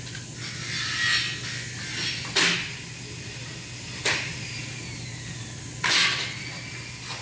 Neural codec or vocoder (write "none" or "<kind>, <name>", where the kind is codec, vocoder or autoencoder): none